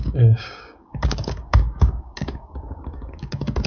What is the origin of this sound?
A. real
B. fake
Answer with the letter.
B